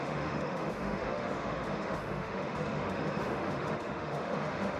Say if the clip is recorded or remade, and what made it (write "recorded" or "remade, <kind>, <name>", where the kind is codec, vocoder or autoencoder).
remade, autoencoder, DAC-VAE